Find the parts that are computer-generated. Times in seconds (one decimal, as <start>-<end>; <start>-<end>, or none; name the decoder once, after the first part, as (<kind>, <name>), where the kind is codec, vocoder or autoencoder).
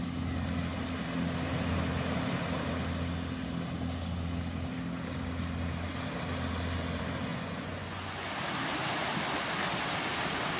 7.3-8.3 (vocoder, Vocos)